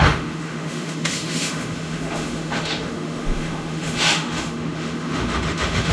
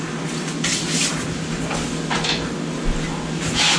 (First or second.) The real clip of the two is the second